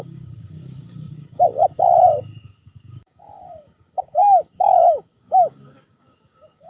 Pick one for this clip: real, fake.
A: fake